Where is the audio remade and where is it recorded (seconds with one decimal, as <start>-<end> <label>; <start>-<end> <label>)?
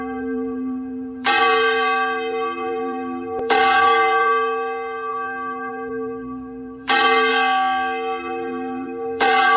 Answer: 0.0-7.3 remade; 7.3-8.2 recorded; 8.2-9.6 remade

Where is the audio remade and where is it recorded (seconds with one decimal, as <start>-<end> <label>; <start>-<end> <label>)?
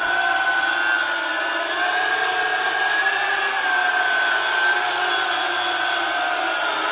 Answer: 0.0-6.9 recorded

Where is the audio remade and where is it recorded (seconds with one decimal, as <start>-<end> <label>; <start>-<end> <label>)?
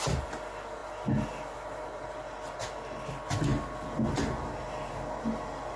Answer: 0.0-5.8 recorded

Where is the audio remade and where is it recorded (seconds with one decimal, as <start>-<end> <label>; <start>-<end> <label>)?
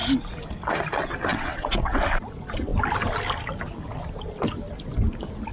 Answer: 0.0-1.3 recorded; 1.3-2.0 remade; 2.0-5.5 recorded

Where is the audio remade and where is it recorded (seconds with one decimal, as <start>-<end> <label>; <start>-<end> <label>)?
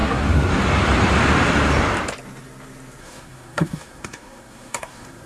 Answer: 0.0-0.5 remade; 0.5-3.0 recorded; 3.0-5.3 remade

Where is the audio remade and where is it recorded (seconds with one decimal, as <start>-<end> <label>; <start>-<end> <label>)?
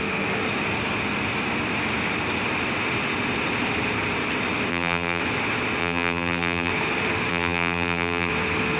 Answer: 0.0-4.7 recorded; 4.7-5.2 remade; 5.2-5.8 recorded; 5.8-6.7 remade; 6.7-7.3 recorded; 7.3-8.3 remade; 8.3-8.8 recorded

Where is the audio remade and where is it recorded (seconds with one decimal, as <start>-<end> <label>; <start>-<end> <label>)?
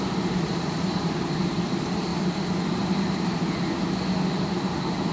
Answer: 0.0-2.1 remade; 2.1-5.1 recorded